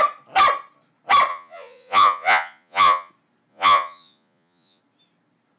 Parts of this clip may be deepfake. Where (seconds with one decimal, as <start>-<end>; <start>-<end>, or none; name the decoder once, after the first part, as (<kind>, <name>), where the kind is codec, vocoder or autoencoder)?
1.3-3.1 (vocoder, Vocos); 3.5-4.8